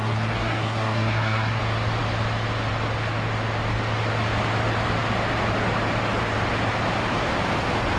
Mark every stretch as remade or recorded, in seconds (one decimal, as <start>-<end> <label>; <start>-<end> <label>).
0.0-1.6 remade; 1.6-8.0 recorded